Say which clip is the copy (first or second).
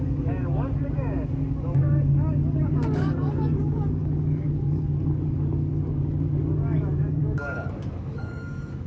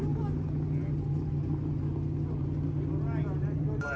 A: first